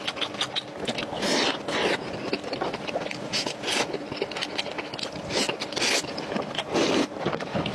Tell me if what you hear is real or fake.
real